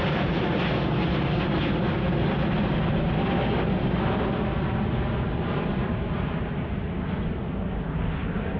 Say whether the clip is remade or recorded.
recorded